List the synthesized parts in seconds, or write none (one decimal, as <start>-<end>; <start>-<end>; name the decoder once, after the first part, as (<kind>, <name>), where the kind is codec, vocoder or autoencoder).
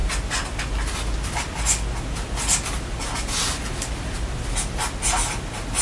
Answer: none